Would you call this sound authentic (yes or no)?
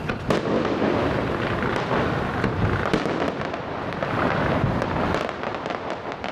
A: yes